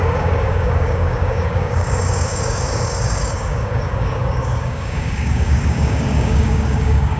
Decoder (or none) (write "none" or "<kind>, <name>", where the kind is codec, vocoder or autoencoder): codec, DAC